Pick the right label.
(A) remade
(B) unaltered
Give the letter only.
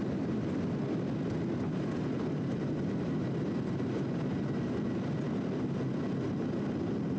A